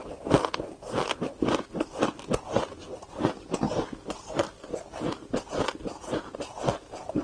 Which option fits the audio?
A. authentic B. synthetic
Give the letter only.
B